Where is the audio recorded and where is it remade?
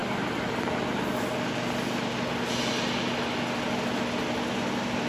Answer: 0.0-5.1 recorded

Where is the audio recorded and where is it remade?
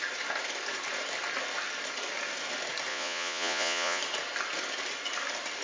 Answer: 0.0-2.9 recorded; 2.9-4.0 remade; 4.0-5.6 recorded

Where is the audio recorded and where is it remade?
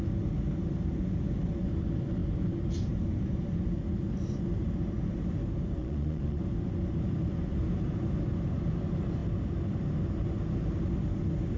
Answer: 0.0-5.8 recorded; 5.8-6.4 remade; 6.4-11.6 recorded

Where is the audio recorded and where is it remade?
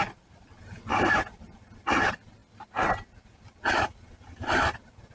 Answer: 0.0-5.1 recorded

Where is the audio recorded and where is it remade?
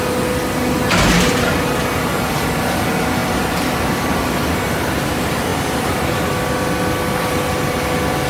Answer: 0.0-3.2 recorded; 3.2-4.3 remade; 4.3-8.3 recorded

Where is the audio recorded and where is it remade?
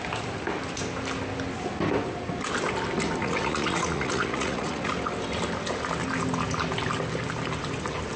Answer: 0.0-3.2 recorded; 3.2-4.9 remade; 4.9-8.2 recorded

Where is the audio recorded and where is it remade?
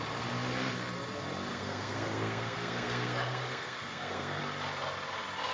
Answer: 0.0-1.5 recorded; 1.5-4.4 remade; 4.4-5.5 recorded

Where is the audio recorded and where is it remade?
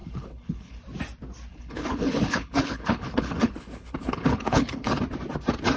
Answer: 0.0-0.8 remade; 0.8-1.5 recorded; 1.5-5.0 remade; 5.0-5.8 recorded